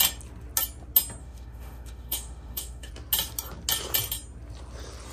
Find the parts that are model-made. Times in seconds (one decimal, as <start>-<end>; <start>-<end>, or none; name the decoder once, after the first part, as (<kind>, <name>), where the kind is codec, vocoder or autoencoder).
1.2-2.9 (autoencoder, DAC-VAE)